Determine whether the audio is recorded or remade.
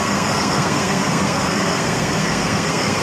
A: remade